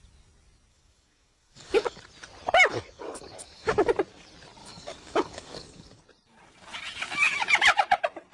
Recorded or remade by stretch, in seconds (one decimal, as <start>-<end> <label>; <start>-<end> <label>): 0.0-0.7 recorded; 0.7-2.0 remade; 2.0-2.7 recorded; 2.7-3.9 remade; 3.9-4.6 recorded; 4.6-6.0 remade; 6.0-8.3 recorded